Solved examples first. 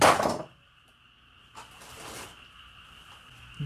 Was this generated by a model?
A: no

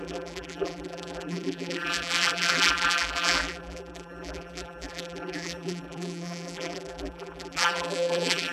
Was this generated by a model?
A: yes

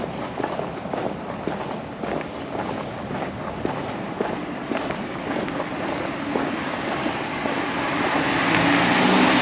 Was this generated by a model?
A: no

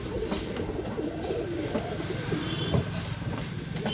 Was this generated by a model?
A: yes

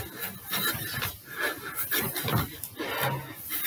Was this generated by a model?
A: no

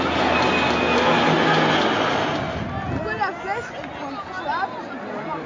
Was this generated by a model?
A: no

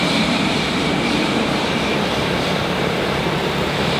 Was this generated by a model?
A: yes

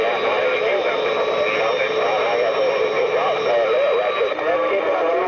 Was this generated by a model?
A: no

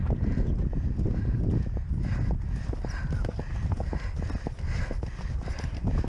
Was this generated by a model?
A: no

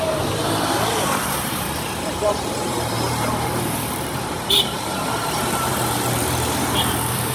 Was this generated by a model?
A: yes